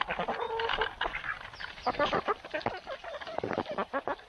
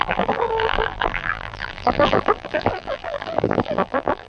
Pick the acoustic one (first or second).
first